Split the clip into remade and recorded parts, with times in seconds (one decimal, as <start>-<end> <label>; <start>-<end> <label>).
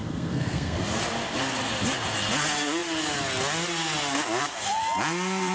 0.0-0.8 remade; 0.8-5.5 recorded